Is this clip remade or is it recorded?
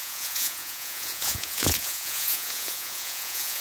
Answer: remade